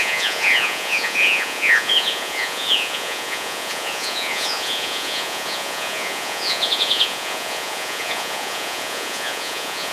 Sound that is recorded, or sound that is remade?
remade